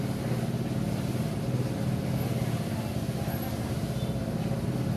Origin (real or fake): real